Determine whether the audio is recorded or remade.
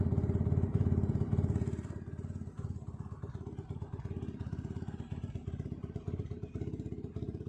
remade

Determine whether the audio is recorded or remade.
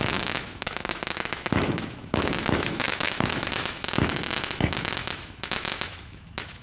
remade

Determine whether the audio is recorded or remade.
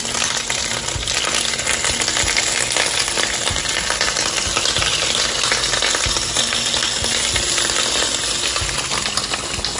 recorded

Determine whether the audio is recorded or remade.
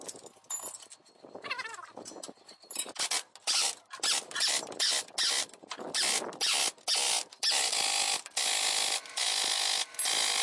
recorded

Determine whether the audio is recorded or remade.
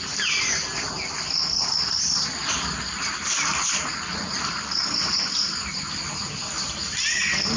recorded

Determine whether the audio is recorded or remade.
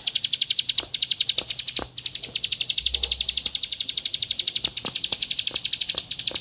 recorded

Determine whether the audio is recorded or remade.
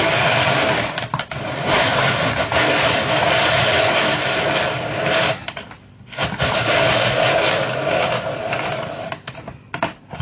recorded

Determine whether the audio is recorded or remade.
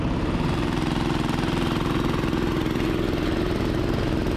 recorded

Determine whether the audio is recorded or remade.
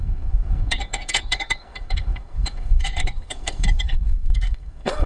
remade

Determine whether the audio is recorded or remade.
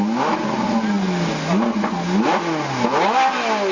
recorded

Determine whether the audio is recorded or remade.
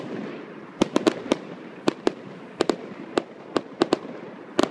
remade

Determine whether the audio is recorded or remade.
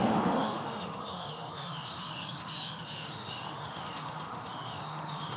remade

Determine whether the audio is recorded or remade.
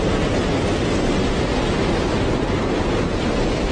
recorded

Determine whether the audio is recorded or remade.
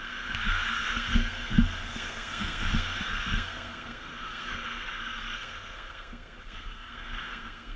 remade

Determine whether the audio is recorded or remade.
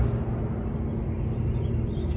recorded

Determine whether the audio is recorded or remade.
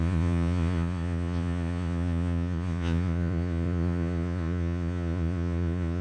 remade